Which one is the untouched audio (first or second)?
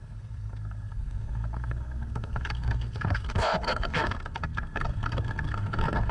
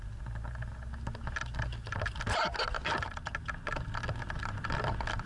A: second